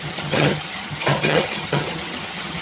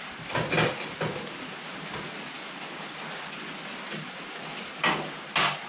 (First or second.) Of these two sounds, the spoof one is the first